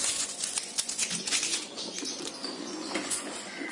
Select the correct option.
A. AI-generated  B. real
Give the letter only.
A